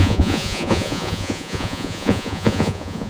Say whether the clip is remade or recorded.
remade